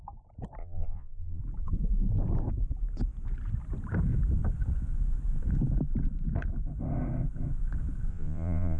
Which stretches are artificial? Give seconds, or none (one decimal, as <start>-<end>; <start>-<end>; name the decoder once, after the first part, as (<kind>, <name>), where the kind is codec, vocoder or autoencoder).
0.6-1.4 (vocoder, Vocos); 8.1-8.8